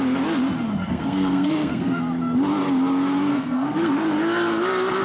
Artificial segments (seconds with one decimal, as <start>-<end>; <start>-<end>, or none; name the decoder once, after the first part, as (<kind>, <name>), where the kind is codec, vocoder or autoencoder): 0.8-2.0 (codec, SNAC); 3.3-3.9